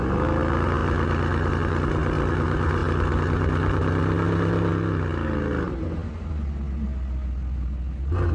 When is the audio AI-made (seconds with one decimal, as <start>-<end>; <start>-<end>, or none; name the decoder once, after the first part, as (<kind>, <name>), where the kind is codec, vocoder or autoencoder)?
none